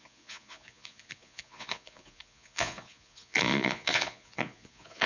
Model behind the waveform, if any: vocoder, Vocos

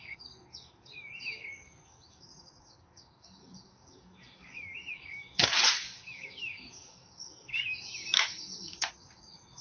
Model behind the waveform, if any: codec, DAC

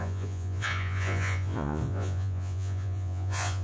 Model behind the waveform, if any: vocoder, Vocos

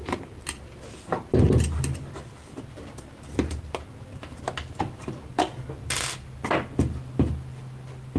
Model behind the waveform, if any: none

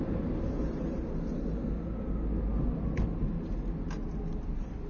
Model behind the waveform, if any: none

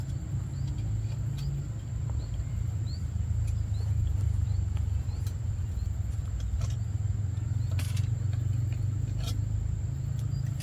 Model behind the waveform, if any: none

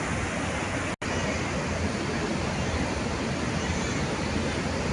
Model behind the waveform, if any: none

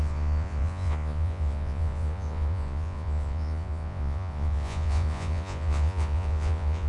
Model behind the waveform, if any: vocoder, Vocos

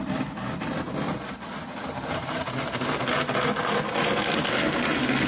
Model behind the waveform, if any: none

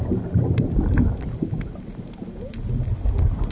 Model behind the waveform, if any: none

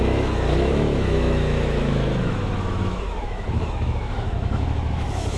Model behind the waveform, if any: autoencoder, DAC-VAE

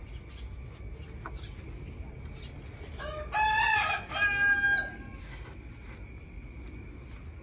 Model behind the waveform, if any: none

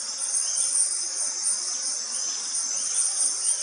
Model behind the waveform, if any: none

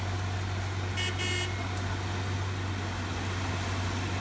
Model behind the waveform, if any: none